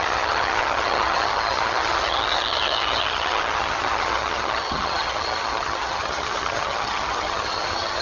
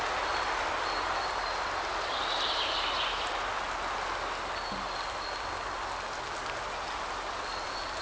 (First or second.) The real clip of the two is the second